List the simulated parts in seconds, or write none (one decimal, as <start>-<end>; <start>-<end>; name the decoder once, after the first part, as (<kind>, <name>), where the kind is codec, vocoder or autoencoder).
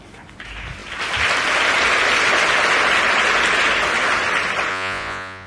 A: 4.7-5.5 (vocoder, Vocos)